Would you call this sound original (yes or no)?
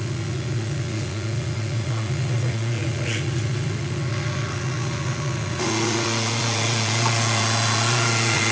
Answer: no